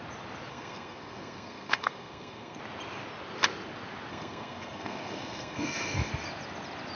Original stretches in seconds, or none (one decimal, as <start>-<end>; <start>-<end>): 0.0-0.5; 2.6-4.1; 6.1-7.0